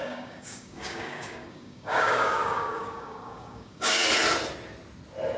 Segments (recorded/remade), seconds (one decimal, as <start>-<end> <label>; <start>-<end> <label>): 0.0-4.0 remade; 4.0-5.4 recorded